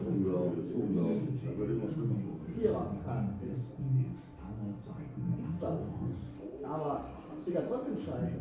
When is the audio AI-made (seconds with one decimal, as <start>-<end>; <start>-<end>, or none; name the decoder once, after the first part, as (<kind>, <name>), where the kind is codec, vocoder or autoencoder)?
none